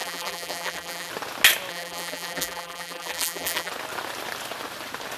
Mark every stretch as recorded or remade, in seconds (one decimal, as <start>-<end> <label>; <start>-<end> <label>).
0.0-1.1 remade; 1.1-1.7 recorded; 1.7-3.7 remade; 3.7-5.2 recorded